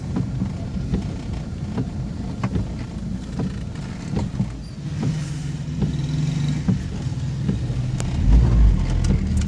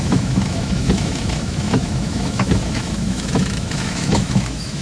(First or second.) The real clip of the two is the first